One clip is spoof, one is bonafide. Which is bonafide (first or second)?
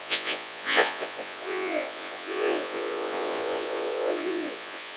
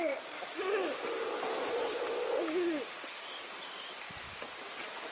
second